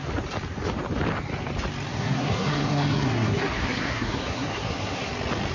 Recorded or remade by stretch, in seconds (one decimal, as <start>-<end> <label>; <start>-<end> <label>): 0.0-1.9 recorded; 1.9-5.1 remade; 5.1-5.5 recorded